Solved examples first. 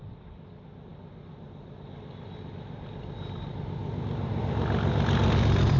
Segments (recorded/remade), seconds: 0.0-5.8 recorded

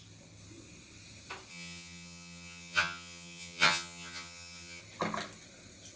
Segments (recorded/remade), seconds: 0.0-1.5 recorded; 1.5-4.8 remade; 4.8-6.0 recorded

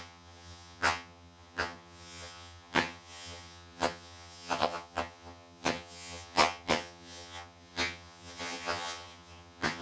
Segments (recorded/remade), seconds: 0.0-9.8 remade